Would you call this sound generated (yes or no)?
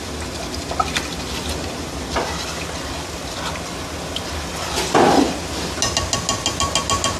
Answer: no